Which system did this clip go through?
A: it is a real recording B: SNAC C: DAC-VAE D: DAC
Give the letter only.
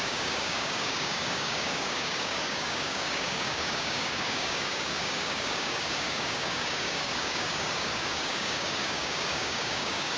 D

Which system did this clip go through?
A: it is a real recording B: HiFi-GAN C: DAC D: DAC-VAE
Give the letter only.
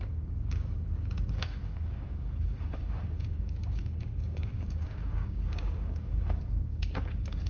C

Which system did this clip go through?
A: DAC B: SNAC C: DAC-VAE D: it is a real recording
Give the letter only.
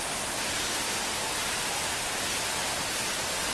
D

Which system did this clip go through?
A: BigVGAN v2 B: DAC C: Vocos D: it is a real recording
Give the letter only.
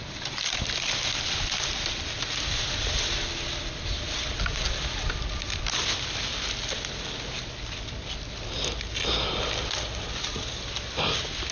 D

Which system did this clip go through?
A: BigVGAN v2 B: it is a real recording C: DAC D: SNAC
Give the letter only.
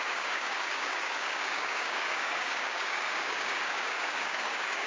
C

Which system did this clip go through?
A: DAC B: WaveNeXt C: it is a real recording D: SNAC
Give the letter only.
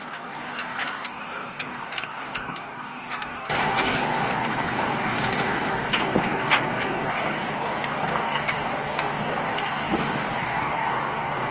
A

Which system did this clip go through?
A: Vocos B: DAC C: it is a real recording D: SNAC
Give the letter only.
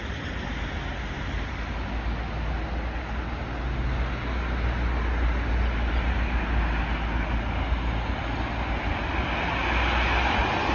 C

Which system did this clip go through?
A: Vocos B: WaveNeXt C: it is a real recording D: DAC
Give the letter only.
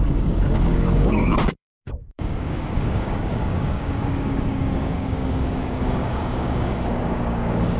D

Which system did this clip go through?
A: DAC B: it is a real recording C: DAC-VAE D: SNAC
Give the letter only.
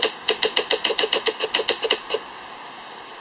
B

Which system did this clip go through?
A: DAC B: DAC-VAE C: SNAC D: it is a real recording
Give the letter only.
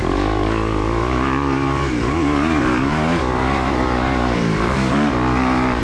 A